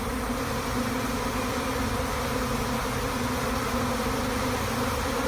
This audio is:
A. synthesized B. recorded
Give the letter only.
B